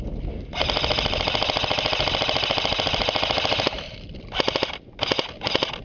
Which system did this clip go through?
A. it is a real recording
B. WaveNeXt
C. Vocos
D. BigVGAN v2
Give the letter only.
A